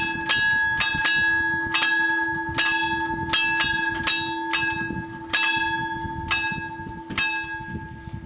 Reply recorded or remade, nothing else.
recorded